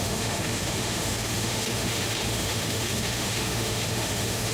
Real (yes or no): no